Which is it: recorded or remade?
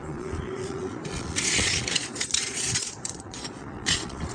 remade